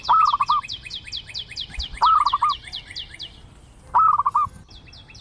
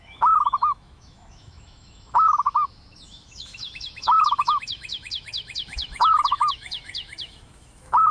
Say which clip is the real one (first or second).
first